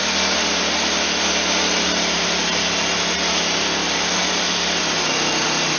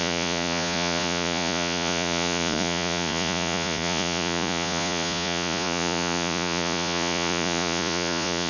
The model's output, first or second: second